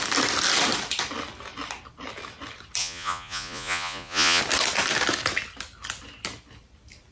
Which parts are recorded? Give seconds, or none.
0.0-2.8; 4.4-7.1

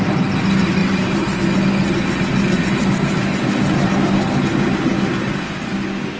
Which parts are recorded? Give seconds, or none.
0.0-0.8; 1.4-6.2